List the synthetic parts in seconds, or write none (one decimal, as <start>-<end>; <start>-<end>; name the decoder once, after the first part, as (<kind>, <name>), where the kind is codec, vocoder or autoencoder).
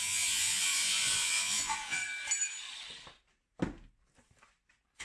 0.0-2.0 (vocoder, Vocos)